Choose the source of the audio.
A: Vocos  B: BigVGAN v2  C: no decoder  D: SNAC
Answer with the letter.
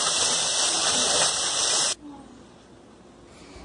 C